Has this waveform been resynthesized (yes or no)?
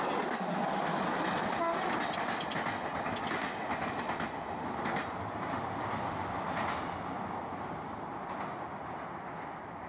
no